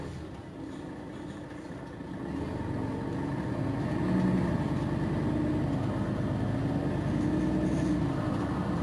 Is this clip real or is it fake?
real